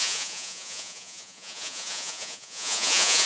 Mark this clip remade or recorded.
remade